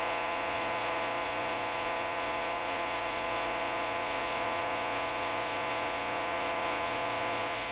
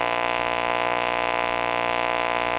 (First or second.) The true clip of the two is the second